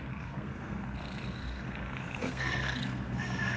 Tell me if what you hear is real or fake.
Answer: fake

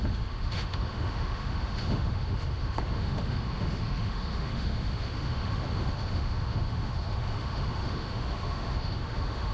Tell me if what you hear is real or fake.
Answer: fake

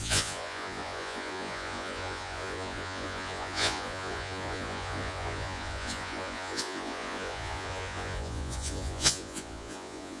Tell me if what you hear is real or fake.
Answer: fake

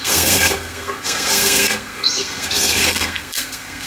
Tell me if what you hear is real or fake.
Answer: fake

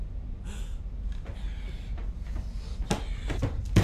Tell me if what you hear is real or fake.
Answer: real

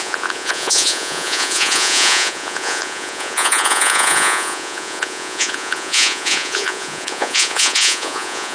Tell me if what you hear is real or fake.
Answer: fake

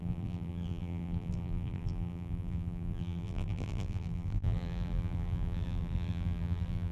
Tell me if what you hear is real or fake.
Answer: fake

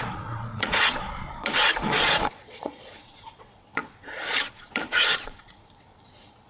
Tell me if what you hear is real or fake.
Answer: fake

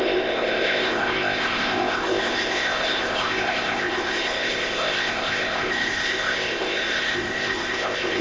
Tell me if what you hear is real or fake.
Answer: fake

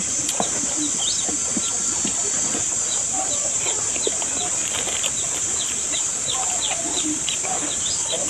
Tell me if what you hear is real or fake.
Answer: fake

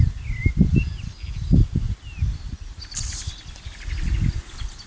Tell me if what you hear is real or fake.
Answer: real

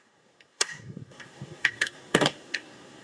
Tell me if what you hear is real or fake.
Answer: fake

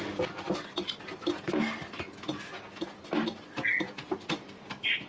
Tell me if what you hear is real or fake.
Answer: real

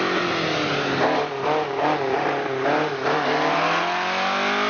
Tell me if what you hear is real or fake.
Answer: real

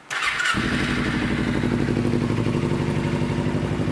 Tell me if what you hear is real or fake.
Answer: real